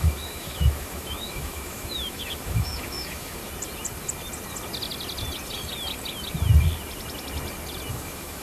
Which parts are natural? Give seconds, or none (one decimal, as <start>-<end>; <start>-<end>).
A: 3.4-7.9